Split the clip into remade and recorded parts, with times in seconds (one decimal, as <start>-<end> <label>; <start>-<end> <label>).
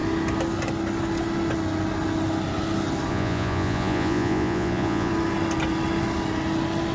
0.0-3.1 recorded; 3.1-5.1 remade; 5.1-6.9 recorded